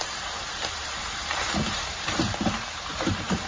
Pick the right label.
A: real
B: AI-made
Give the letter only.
B